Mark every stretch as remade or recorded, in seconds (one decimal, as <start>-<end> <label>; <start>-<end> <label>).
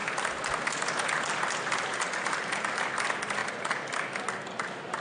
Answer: 0.0-5.0 recorded